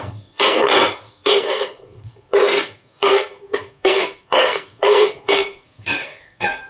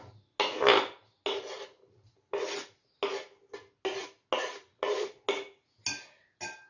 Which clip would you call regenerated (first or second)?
first